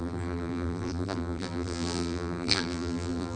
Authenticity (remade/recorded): remade